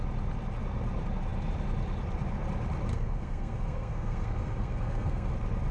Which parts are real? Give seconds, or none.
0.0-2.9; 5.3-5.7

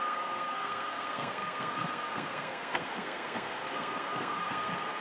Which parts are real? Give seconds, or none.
none

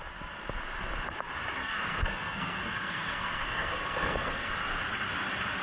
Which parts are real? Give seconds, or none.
0.0-1.6; 4.5-5.6

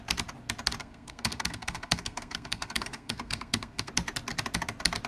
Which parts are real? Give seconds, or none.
0.0-0.8; 3.9-5.1